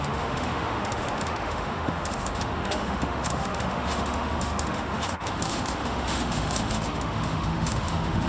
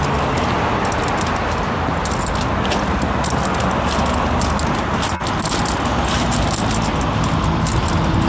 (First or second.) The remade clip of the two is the first